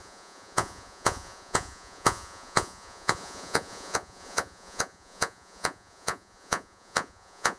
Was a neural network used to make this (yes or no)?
yes